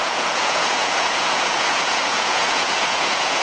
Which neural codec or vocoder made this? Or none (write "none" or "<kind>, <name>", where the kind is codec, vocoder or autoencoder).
vocoder, Vocos